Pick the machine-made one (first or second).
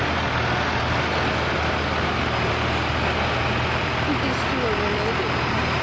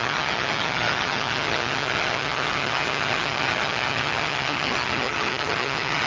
second